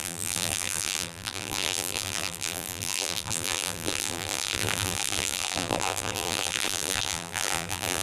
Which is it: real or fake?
fake